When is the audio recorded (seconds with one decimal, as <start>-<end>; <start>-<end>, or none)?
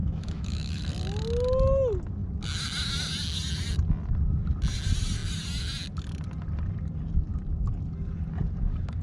0.9-9.0